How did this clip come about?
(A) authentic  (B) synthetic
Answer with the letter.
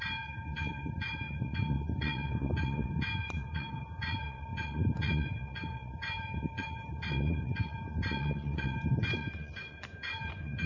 B